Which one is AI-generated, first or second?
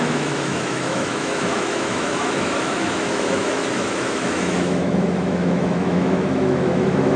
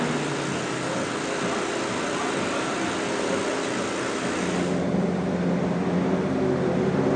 first